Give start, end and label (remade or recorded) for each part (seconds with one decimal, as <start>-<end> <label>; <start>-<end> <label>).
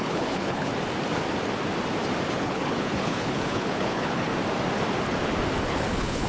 0.0-0.7 remade; 0.7-2.3 recorded; 2.3-4.3 remade; 4.3-5.6 recorded; 5.6-6.3 remade